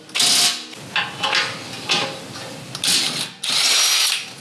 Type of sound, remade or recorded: recorded